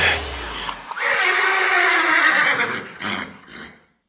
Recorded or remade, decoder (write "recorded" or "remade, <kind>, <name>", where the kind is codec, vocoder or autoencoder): recorded